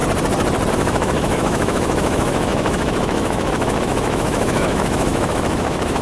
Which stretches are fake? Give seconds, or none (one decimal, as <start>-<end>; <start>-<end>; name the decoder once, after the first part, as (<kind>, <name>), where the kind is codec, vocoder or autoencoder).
0.7-6.0 (autoencoder, DAC-VAE)